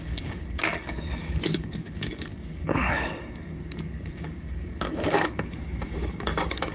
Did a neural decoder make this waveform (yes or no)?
yes